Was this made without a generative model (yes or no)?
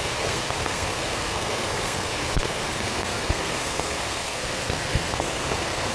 no